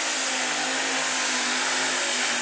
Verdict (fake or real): real